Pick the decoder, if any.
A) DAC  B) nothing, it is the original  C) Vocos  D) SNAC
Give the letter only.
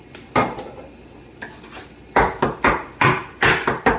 B